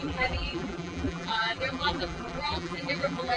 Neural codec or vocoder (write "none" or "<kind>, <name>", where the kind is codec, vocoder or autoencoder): vocoder, BigVGAN v2